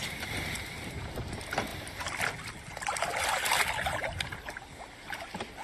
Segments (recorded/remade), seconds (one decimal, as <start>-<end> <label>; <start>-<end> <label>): 0.0-5.6 recorded